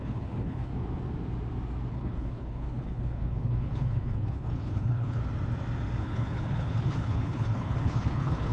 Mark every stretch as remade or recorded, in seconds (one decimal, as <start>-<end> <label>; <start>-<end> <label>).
0.0-0.7 remade; 0.7-1.9 recorded; 1.9-5.2 remade; 5.2-6.0 recorded; 6.0-8.5 remade

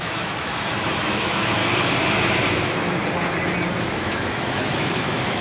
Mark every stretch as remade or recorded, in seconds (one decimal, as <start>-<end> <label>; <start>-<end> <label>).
0.0-1.6 remade; 1.6-2.5 recorded; 2.5-3.0 remade; 3.0-4.0 recorded; 4.0-5.4 remade